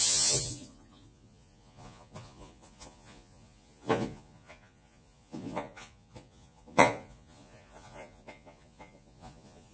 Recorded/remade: remade